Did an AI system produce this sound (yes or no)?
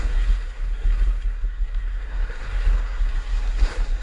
yes